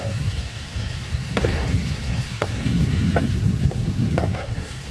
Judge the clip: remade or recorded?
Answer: remade